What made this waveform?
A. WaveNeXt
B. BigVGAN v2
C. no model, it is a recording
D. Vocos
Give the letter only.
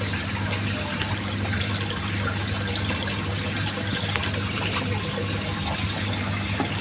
C